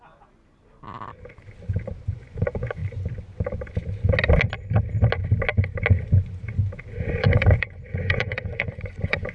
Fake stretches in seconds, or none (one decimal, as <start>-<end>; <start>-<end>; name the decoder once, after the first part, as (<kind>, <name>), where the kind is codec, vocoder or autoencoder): 2.1-2.8 (vocoder, Vocos); 7.1-9.3